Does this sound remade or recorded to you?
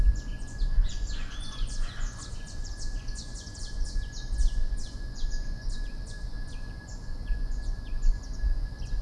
remade